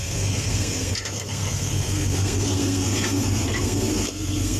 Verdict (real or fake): fake